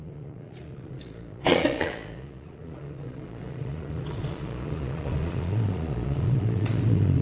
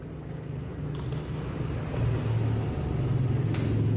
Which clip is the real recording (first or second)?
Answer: second